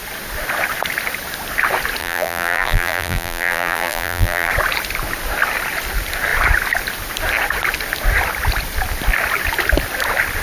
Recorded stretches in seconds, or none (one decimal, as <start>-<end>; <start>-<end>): 0.0-2.0; 4.5-10.4